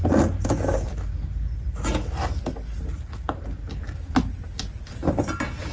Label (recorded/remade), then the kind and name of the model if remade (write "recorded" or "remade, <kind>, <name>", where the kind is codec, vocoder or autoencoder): recorded